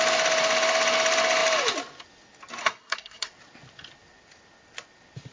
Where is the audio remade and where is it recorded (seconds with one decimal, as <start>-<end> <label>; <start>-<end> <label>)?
0.0-2.6 recorded; 2.6-3.3 remade; 3.3-5.3 recorded